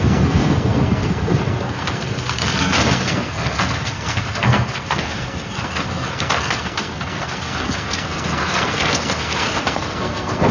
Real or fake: fake